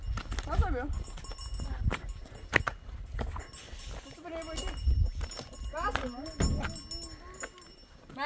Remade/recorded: recorded